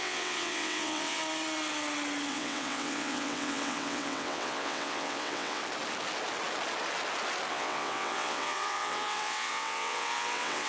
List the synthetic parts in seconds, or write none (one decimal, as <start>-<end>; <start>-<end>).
0.0-1.2; 2.3-5.6; 7.5-10.7

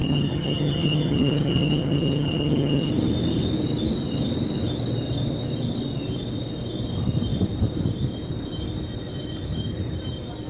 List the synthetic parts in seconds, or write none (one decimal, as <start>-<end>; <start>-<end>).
0.0-2.9

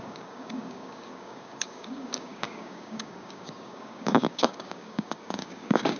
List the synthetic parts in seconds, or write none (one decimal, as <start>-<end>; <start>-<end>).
0.0-6.0

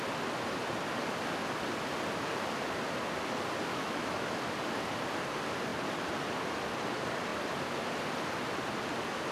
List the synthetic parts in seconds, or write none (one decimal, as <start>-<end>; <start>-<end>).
3.7-4.4

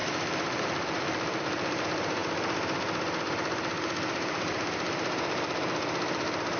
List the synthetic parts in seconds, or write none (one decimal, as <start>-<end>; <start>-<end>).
0.0-2.2; 3.3-6.6

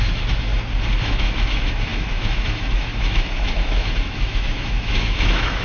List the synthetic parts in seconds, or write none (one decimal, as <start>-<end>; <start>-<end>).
0.0-0.5; 1.0-5.6

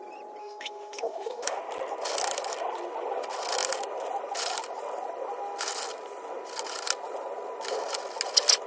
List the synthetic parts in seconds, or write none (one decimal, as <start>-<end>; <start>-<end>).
0.4-1.6

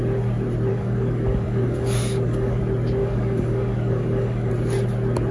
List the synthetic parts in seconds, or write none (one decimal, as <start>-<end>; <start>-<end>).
0.7-2.6; 3.0-4.5